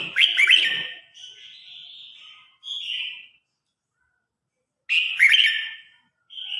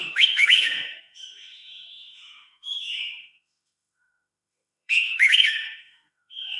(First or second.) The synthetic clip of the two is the second